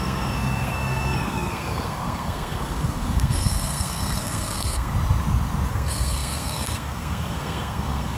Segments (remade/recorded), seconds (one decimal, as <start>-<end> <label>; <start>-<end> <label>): 0.0-4.9 remade; 4.9-5.7 recorded; 5.7-8.2 remade